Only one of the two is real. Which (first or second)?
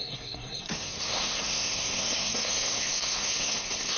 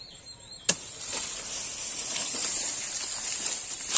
second